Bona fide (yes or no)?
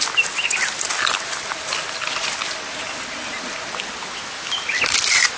yes